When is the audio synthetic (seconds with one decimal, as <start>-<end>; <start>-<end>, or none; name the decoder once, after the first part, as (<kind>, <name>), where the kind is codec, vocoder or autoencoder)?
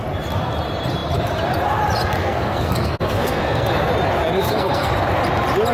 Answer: 2.2-3.9 (codec, SNAC); 4.4-4.9